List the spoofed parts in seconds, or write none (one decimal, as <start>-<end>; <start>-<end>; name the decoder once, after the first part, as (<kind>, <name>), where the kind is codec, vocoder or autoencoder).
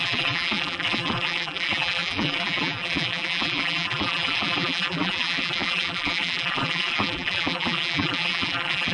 0.0-8.9 (vocoder, BigVGAN v2)